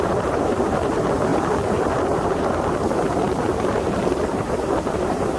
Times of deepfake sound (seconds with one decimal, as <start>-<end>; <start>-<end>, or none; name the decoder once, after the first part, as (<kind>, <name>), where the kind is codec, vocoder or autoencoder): 0.0-5.4 (vocoder, BigVGAN v2)